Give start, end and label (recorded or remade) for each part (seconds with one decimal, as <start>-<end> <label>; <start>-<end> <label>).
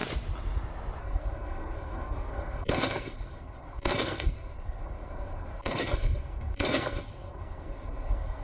0.0-1.0 recorded; 1.0-8.4 remade